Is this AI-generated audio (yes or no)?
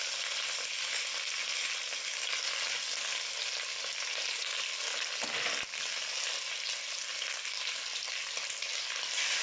no